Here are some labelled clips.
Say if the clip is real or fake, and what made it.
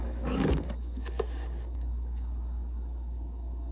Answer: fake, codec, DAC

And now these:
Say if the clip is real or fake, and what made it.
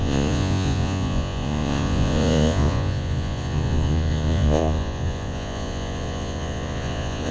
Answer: fake, vocoder, Vocos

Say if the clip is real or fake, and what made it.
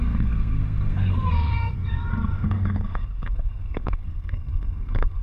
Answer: fake, codec, SNAC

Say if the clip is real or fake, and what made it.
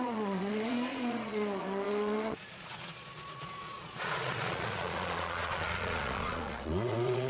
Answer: fake, vocoder, Vocos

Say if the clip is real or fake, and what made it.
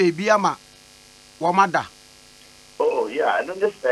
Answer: real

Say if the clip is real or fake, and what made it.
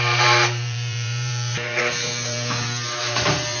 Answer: fake, vocoder, BigVGAN v2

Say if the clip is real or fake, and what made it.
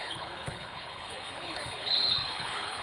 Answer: fake, codec, HILCodec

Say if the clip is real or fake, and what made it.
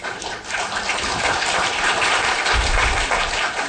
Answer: fake, vocoder, BigVGAN v2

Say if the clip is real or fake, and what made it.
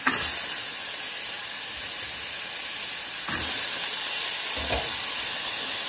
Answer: real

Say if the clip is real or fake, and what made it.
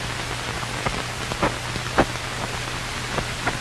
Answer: real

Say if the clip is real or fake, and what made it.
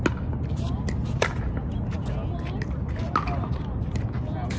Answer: real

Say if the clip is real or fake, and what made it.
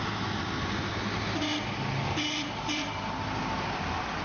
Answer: real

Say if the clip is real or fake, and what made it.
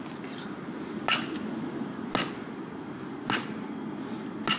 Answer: real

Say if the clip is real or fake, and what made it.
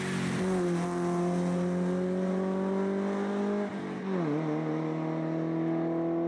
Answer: real